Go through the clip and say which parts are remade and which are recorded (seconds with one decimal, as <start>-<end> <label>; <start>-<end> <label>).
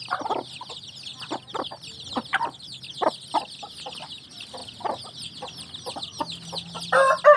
0.0-2.3 recorded; 2.3-2.8 remade; 2.8-7.4 recorded